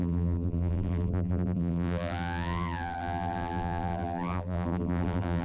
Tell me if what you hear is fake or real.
fake